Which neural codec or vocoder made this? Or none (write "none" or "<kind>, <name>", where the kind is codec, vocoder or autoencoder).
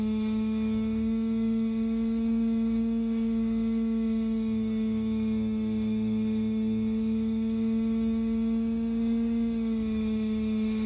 codec, DAC